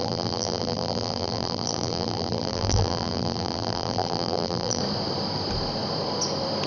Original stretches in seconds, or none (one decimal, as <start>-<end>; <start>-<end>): 4.8-6.7